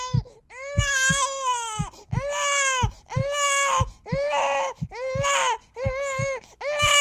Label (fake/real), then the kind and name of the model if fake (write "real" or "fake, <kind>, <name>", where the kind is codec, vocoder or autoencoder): fake, autoencoder, DAC-VAE